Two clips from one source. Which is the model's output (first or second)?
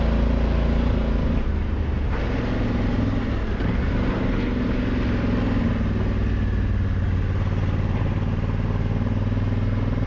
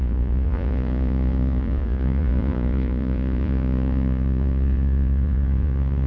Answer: second